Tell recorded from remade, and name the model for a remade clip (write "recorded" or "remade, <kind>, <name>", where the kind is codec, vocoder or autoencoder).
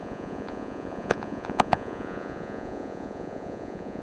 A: remade, vocoder, Vocos